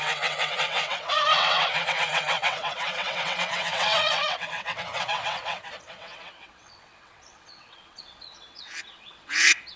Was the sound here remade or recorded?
remade